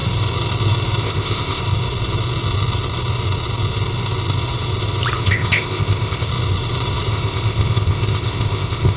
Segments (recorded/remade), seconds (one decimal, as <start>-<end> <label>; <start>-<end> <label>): 0.0-1.0 recorded; 1.0-1.6 remade; 1.6-5.2 recorded; 5.2-6.3 remade; 6.3-7.1 recorded; 7.1-9.0 remade